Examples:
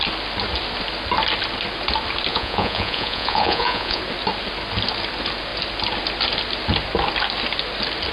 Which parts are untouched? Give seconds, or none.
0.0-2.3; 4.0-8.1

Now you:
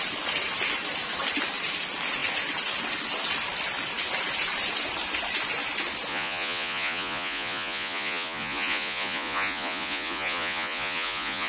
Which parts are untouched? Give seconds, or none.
0.0-6.1

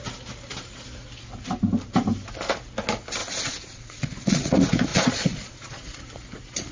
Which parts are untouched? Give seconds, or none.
0.0-3.2; 4.5-4.9; 6.0-6.7

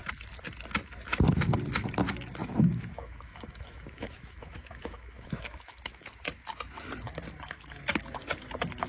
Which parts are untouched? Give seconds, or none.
0.0-2.4; 6.1-8.9

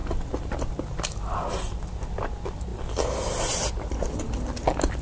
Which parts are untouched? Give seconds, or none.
0.0-5.0